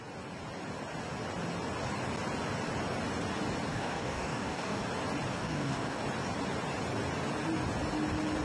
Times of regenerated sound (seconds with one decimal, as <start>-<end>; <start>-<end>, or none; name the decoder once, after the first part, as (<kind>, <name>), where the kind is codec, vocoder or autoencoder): 3.7-4.8 (codec, DAC); 5.4-6.0